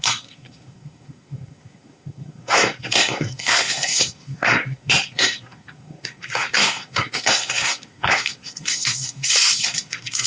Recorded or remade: remade